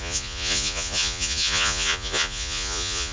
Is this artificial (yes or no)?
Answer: yes